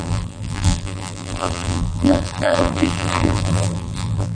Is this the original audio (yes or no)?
no